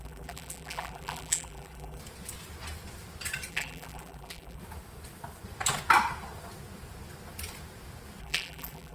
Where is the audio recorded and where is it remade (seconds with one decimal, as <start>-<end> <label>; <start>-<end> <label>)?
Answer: 0.0-2.0 remade; 2.0-3.5 recorded; 3.5-4.6 remade; 4.6-8.2 recorded; 8.2-8.9 remade